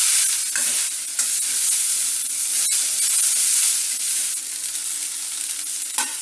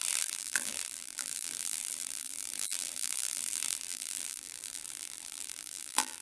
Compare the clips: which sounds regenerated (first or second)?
second